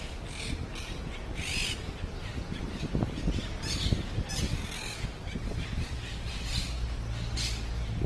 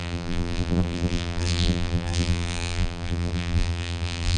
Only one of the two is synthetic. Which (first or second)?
second